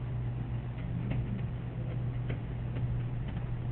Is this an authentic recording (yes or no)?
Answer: yes